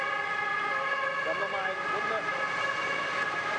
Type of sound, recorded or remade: recorded